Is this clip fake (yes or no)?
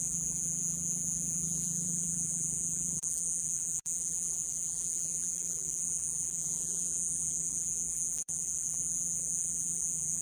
yes